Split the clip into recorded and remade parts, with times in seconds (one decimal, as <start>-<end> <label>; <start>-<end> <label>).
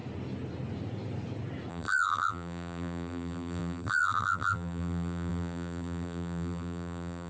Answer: 0.0-1.7 recorded; 1.7-7.3 remade